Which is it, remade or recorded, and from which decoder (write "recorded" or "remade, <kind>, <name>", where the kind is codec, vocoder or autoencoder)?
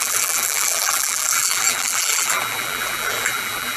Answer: remade, vocoder, BigVGAN v2